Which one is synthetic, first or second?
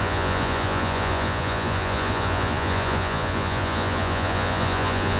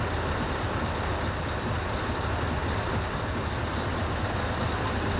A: first